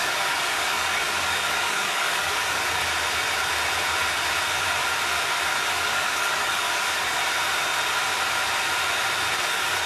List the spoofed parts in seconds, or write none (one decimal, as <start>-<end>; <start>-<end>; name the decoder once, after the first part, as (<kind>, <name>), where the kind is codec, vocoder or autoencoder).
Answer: 0.0-2.8 (codec, DAC); 5.7-7.2; 9.3-9.9